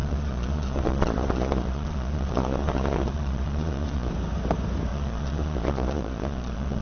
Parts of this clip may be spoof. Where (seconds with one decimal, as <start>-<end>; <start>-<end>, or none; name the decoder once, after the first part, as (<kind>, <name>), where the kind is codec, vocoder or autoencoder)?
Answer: 0.0-4.1 (vocoder, Vocos); 4.9-6.8